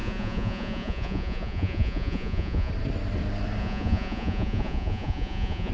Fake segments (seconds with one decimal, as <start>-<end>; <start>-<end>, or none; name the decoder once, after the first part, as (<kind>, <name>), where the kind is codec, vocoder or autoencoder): 0.0-2.7 (vocoder, Vocos); 3.6-5.7